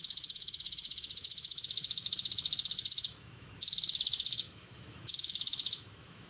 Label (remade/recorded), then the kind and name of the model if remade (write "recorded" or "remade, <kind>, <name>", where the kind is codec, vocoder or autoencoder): remade, autoencoder, DAC-VAE